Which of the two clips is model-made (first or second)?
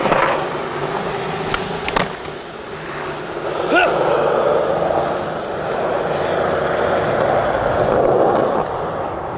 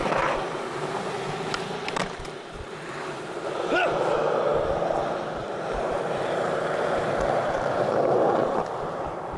second